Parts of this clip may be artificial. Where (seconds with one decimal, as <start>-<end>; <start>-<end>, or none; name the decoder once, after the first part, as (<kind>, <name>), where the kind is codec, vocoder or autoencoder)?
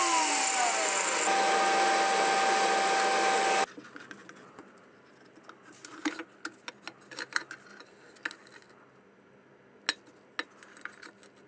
none